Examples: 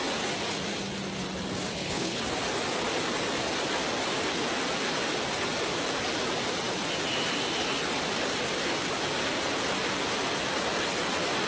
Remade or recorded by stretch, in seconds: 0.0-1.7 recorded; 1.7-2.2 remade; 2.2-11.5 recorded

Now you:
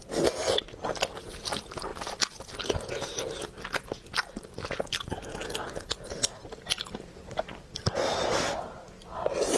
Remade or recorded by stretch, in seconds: 0.0-9.6 recorded

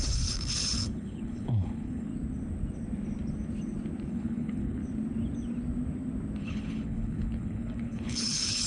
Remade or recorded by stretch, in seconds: 0.0-2.1 remade; 2.1-4.1 recorded; 4.1-4.8 remade; 4.8-6.4 recorded; 6.4-8.7 remade

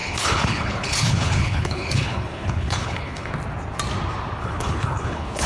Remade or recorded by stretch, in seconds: 0.0-3.3 remade; 3.3-4.4 recorded; 4.4-5.5 remade

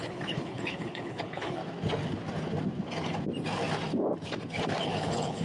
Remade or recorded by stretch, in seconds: 0.0-1.6 remade; 1.6-4.8 recorded; 4.8-5.4 remade

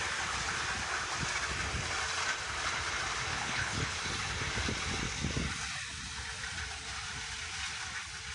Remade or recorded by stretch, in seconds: 0.0-3.3 recorded; 3.3-4.1 remade; 4.1-8.3 recorded